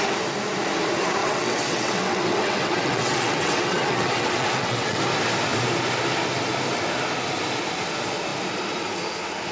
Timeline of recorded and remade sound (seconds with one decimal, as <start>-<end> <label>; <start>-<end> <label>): 0.0-1.2 recorded; 1.2-5.0 remade; 5.0-9.5 recorded